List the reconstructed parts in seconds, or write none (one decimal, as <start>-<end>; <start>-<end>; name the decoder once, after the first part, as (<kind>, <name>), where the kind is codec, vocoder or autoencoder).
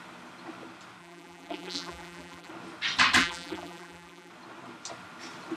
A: 1.0-2.5 (vocoder, BigVGAN v2); 3.2-4.3